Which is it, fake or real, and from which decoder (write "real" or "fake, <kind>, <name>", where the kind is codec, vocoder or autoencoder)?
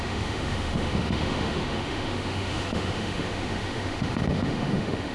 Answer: fake, autoencoder, DAC-VAE